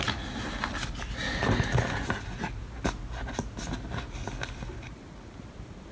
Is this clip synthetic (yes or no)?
no